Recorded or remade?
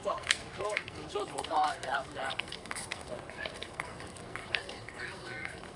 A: remade